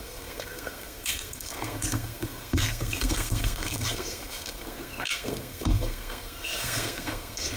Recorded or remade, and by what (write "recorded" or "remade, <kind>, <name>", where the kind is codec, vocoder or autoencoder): remade, codec, SNAC